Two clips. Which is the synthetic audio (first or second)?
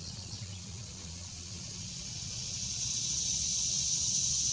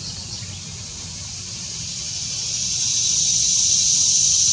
first